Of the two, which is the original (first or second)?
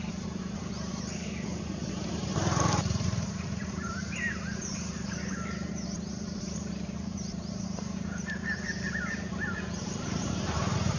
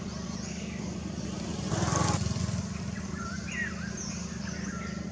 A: second